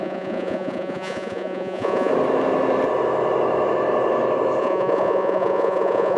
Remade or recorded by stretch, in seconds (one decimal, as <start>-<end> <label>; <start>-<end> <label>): 0.0-2.1 remade; 2.1-4.6 recorded; 4.6-6.2 remade